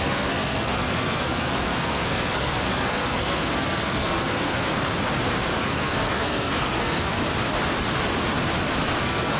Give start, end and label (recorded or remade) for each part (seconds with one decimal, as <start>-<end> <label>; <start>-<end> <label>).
0.0-4.7 remade; 4.7-5.6 recorded; 5.6-7.2 remade; 7.2-9.0 recorded; 9.0-9.4 remade